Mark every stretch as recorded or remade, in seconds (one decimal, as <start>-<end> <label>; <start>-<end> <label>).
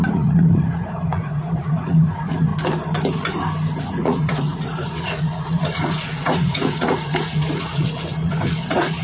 0.0-2.5 remade; 2.5-3.8 recorded; 3.8-9.0 remade